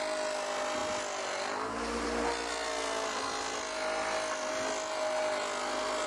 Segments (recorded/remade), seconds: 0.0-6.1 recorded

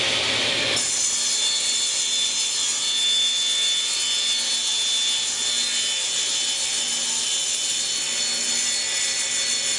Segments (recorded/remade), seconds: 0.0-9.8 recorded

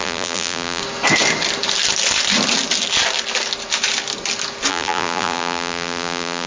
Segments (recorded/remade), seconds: 0.0-0.8 remade; 0.8-4.7 recorded; 4.7-6.5 remade

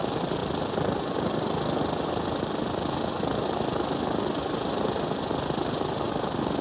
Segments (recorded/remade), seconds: 0.0-6.6 recorded

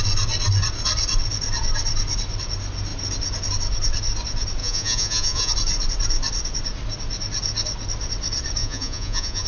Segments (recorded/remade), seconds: 0.0-4.6 recorded; 4.6-5.5 remade; 5.5-8.6 recorded; 8.6-9.5 remade

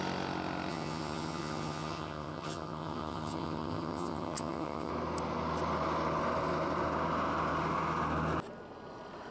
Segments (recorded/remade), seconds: 0.0-0.7 recorded; 0.7-4.9 remade; 4.9-9.3 recorded

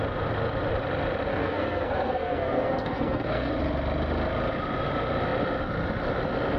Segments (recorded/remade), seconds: 0.0-1.3 recorded; 1.3-3.5 remade; 3.5-6.6 recorded

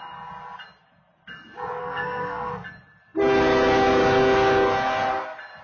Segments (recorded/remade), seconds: 0.0-1.8 recorded; 1.8-2.5 remade; 2.5-5.6 recorded